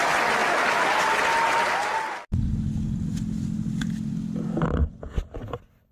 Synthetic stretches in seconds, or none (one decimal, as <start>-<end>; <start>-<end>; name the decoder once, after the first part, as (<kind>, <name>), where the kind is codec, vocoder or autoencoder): none